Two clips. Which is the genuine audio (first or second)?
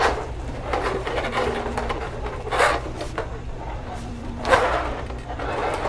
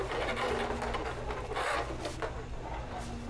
second